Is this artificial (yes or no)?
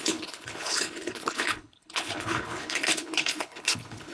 yes